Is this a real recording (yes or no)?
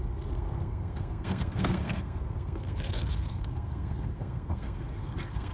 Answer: no